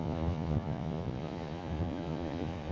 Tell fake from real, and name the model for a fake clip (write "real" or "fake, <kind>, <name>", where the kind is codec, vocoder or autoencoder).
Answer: fake, vocoder, Vocos